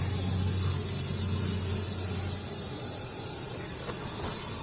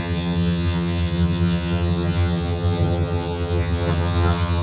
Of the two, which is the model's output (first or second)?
second